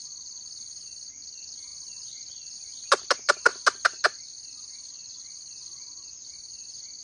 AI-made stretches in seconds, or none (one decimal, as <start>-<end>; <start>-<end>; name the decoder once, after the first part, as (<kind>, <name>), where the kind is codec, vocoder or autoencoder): none

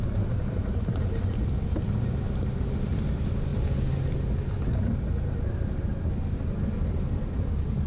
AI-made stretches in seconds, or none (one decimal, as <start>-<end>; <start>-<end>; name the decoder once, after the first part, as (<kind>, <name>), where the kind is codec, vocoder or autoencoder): none